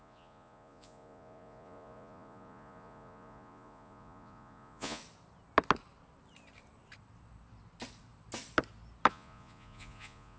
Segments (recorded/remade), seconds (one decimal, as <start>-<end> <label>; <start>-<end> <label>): 0.0-5.0 remade; 5.0-9.1 recorded; 9.1-10.4 remade